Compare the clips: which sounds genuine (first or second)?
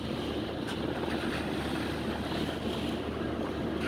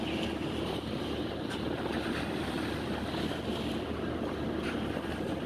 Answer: first